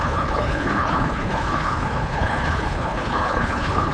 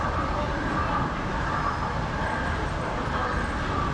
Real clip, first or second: second